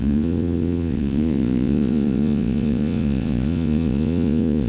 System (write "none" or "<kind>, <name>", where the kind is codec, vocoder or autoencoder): vocoder, Vocos